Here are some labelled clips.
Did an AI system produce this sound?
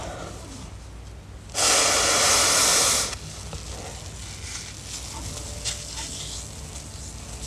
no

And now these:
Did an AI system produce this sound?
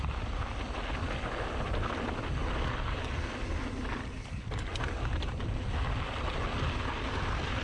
no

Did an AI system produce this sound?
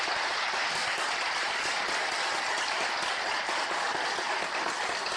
no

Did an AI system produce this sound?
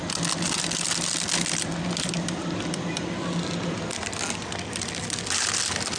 no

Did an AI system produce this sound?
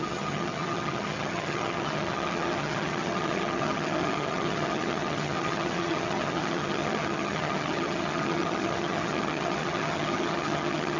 yes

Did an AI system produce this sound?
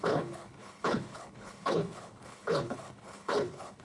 yes